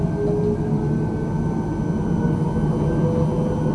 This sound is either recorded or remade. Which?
recorded